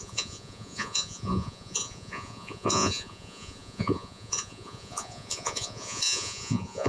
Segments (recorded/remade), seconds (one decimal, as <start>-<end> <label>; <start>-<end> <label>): 0.0-6.9 remade